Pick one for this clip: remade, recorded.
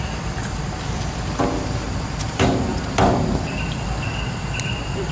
remade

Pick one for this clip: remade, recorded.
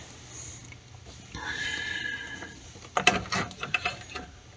recorded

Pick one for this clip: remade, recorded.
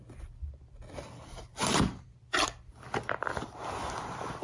remade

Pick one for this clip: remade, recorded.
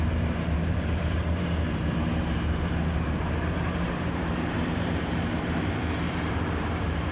remade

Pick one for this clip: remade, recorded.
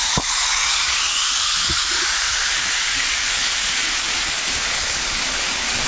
remade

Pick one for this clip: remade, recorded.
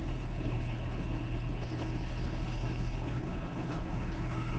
remade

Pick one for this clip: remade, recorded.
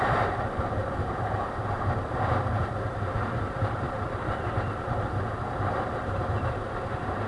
remade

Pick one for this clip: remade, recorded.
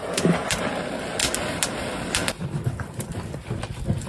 recorded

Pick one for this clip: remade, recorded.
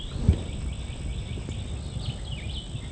recorded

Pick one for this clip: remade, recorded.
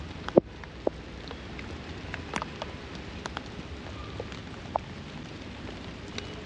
recorded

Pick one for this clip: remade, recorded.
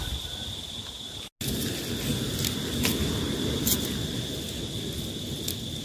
recorded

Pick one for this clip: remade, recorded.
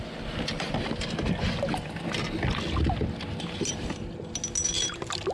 recorded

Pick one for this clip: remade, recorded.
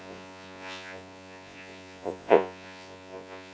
remade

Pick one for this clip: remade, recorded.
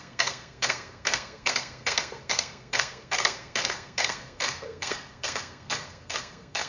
remade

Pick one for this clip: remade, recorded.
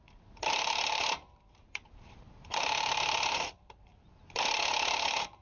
remade